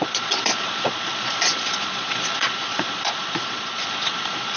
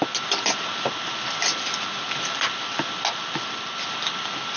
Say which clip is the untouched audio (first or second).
second